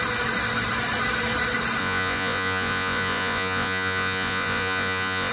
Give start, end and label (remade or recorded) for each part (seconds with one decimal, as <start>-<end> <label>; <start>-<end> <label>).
0.0-1.8 recorded; 1.8-5.3 remade